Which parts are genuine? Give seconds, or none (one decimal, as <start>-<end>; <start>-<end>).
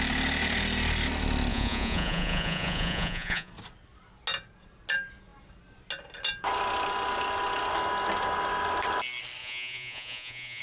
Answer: 0.0-1.5; 3.5-9.4